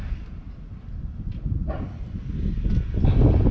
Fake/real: real